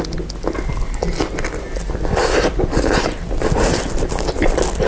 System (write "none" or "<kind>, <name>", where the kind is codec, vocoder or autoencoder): none